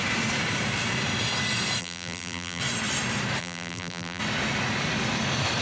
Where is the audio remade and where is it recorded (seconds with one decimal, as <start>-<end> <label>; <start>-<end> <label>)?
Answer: 0.0-1.8 recorded; 1.8-2.6 remade; 2.6-3.4 recorded; 3.4-4.2 remade; 4.2-5.6 recorded